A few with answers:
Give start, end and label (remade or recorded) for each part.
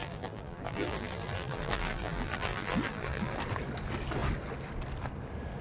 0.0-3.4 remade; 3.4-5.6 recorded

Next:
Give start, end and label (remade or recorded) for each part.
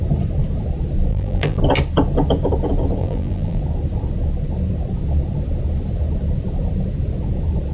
0.0-1.1 recorded; 1.1-1.6 remade; 1.6-3.0 recorded; 3.0-3.6 remade; 3.6-7.7 recorded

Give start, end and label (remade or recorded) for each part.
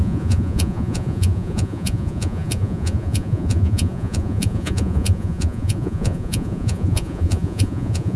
0.0-8.2 remade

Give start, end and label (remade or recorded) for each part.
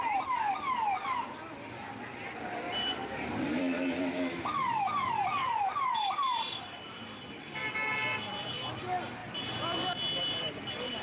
0.0-7.6 remade; 7.6-8.4 recorded; 8.4-9.2 remade; 9.2-10.2 recorded; 10.2-11.0 remade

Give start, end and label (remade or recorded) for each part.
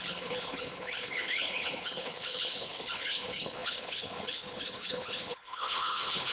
0.0-6.3 remade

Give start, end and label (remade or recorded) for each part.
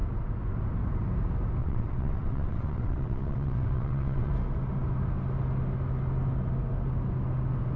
0.0-1.6 recorded; 1.6-4.3 remade; 4.3-7.8 recorded